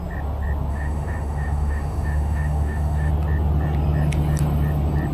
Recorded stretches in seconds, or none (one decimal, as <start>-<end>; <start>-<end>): 0.0-0.7; 3.1-5.1